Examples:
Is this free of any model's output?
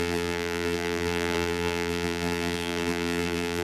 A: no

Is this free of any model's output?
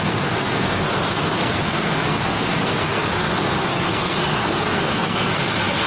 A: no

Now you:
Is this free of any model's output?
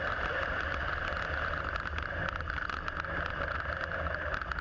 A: yes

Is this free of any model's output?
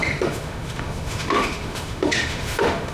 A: no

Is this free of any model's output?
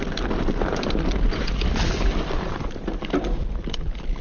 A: yes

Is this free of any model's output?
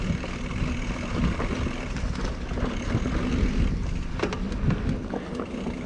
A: yes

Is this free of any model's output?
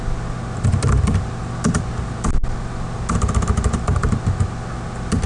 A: yes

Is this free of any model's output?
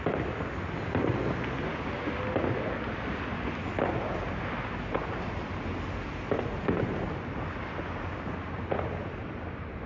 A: yes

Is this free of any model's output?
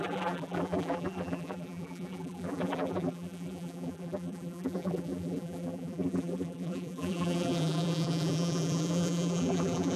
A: no